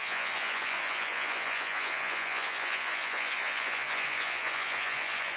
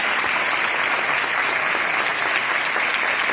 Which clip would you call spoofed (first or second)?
first